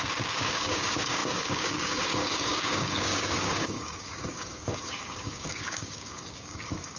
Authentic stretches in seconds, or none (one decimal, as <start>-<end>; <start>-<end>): none